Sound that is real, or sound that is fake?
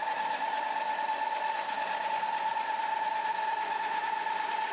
real